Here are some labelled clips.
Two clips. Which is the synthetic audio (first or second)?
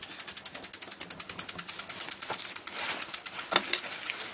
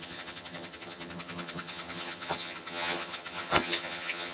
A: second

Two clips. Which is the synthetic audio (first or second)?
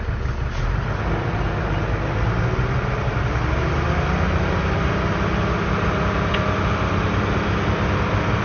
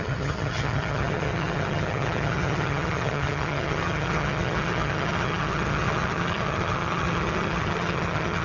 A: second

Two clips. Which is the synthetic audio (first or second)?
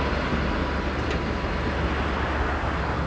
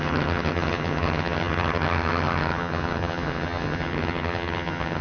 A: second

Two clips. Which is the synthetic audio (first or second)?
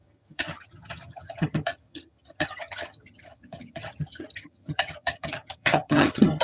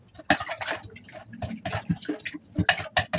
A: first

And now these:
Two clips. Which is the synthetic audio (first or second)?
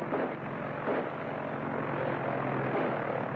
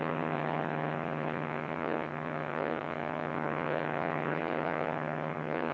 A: second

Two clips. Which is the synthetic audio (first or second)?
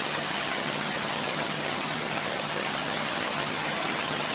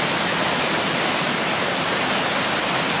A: first